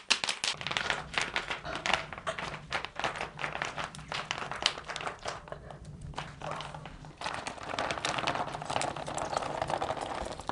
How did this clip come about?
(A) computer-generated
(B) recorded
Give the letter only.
B